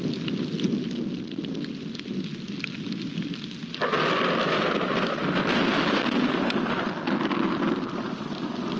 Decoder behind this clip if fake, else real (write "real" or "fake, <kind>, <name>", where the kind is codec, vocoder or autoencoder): real